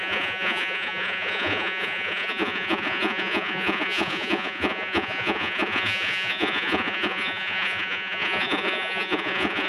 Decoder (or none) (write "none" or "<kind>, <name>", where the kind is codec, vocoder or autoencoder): vocoder, Vocos